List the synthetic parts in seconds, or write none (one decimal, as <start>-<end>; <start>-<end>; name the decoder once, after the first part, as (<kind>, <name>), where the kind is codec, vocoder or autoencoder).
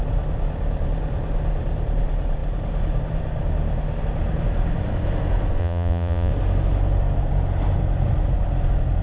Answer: 5.6-6.3 (vocoder, Vocos)